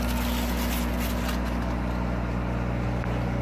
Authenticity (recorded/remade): recorded